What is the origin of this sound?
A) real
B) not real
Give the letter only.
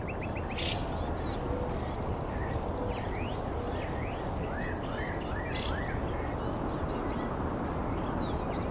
A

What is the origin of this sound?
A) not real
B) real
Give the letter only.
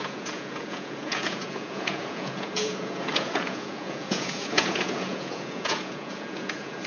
A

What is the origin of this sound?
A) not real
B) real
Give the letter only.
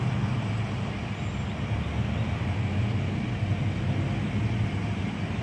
B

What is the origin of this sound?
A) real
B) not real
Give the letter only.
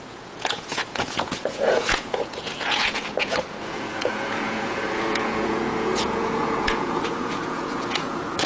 B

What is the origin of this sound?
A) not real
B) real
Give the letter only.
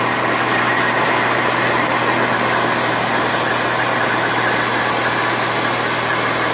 B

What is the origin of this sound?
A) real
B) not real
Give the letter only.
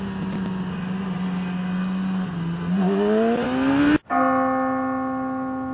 A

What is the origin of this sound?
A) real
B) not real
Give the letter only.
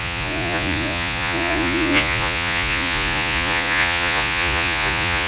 B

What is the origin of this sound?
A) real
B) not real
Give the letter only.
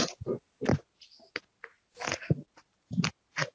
A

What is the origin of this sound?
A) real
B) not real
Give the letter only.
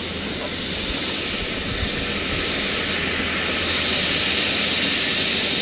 A